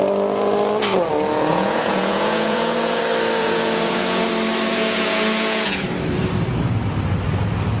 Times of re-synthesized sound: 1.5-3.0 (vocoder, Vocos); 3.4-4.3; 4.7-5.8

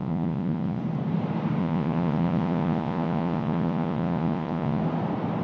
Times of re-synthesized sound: 0.0-0.8 (vocoder, Vocos); 1.6-4.8

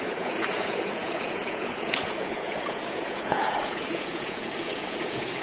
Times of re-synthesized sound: 0.0-5.4 (vocoder, Vocos)

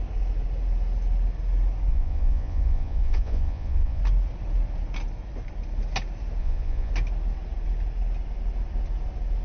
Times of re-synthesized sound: 1.9-4.0 (vocoder, Vocos); 6.4-6.9

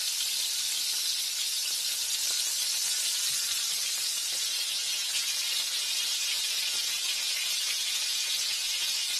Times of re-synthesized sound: 1.4-2.0 (vocoder, Vocos); 4.1-9.2

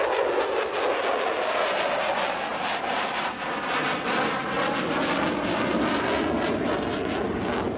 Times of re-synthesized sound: none

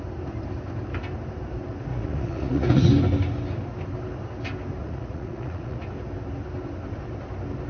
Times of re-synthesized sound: 1.9-2.9 (vocoder, Vocos); 4.8-5.8

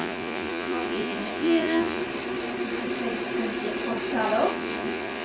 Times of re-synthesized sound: 0.0-2.0 (vocoder, Vocos); 4.5-5.2